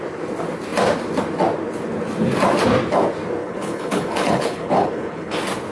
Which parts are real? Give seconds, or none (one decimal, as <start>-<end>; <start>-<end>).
0.0-3.4; 5.3-5.7